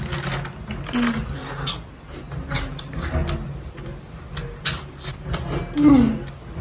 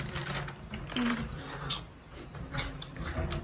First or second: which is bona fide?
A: first